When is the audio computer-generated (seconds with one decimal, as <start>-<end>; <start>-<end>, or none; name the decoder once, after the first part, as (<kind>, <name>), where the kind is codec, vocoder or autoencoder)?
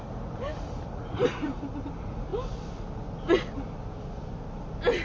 0.5-1.9 (vocoder, BigVGAN v2)